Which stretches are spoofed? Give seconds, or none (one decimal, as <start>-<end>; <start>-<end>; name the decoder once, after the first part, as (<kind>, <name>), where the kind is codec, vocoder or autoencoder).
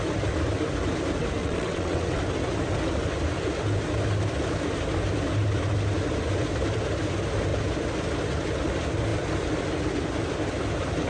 1.4-2.2 (vocoder, WaveNeXt)